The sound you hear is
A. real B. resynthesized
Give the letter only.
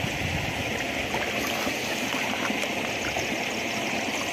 A